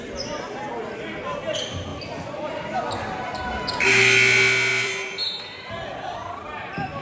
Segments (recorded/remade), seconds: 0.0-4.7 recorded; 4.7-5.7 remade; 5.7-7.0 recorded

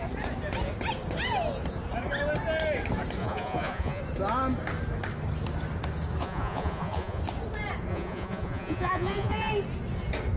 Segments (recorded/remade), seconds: 0.0-3.2 recorded; 3.2-4.0 remade; 4.0-6.2 recorded; 6.2-7.2 remade; 7.2-7.9 recorded; 7.9-9.5 remade; 9.5-10.4 recorded